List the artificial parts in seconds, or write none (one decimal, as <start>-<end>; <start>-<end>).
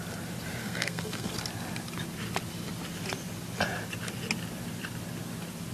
0.6-1.3